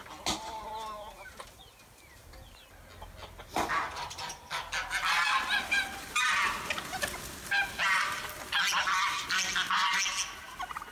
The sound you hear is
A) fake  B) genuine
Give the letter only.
B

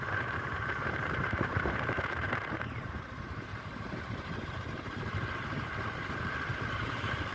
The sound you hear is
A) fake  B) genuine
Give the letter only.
A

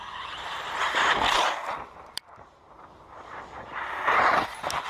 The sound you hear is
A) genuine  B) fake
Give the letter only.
B